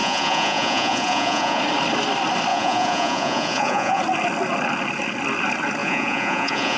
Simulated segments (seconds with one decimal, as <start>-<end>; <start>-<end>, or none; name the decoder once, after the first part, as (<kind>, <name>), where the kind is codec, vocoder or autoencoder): 0.0-1.6 (vocoder, Vocos); 2.5-4.0; 5.8-6.8